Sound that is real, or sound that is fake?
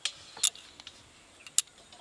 real